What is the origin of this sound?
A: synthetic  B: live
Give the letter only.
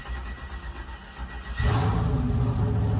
B